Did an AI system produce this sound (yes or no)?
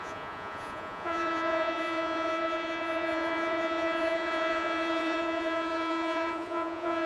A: yes